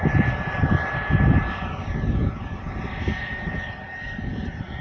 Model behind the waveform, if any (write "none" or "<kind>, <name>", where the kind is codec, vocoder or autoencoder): none